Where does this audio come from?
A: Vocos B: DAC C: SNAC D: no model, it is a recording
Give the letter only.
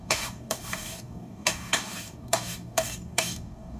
B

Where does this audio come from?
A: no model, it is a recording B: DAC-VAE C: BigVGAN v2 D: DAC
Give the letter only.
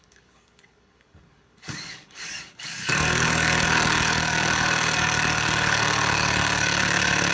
D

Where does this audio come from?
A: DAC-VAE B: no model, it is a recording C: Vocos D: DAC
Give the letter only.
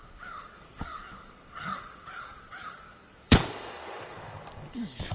D